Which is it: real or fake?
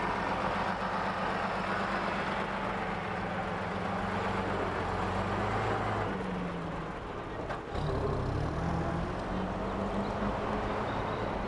real